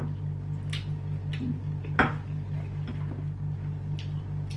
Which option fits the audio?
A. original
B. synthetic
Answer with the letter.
A